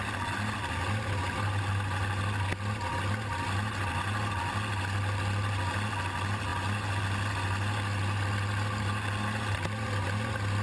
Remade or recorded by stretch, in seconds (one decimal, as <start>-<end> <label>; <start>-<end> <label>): 0.0-10.6 recorded